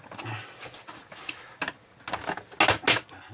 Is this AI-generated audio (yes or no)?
no